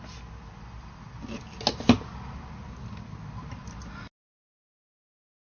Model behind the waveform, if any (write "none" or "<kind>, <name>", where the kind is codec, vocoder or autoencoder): none